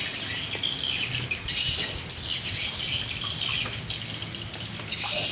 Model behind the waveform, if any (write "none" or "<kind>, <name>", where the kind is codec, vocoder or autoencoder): none